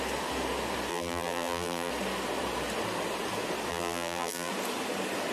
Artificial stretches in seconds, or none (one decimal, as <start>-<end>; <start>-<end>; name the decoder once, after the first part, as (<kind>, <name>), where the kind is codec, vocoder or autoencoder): 0.9-1.9 (vocoder, BigVGAN v2); 3.7-4.5

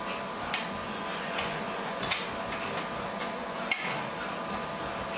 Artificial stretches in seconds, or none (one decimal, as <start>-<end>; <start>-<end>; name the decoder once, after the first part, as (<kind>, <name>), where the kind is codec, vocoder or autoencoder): 0.8-2.2 (vocoder, Vocos); 3.2-4.1

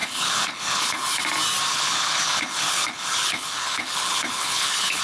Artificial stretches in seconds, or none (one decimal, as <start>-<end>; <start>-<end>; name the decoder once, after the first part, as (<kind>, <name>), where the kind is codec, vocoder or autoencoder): 0.0-1.2 (codec, HILCodec); 1.7-5.0